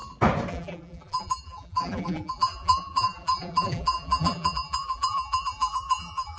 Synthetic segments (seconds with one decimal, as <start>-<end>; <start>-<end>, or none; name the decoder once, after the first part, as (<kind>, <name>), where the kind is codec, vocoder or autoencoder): 0.5-6.4 (vocoder, BigVGAN v2)